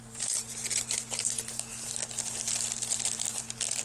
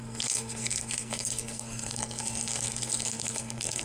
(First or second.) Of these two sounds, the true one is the first